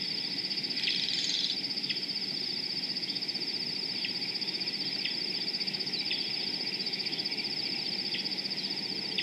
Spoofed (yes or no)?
no